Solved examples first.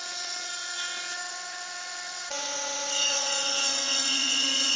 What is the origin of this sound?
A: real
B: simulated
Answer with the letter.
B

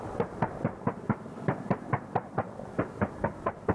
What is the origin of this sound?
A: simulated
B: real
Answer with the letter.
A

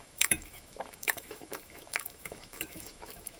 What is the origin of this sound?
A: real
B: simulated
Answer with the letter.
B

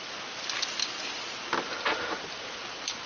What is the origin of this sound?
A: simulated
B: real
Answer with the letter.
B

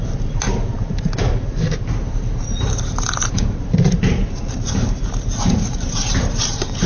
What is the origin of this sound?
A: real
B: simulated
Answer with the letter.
B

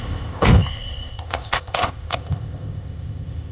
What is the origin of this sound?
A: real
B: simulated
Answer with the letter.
B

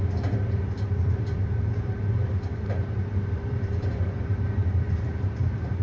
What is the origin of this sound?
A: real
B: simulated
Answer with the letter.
B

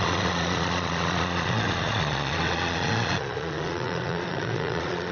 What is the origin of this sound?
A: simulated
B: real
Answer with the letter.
A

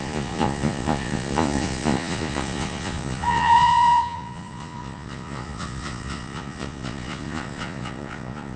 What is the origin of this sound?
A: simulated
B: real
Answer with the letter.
A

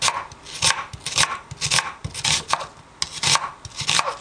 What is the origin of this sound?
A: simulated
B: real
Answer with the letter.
B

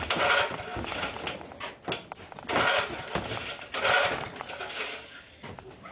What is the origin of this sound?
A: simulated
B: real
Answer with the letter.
B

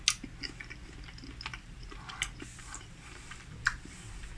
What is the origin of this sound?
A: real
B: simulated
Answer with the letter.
A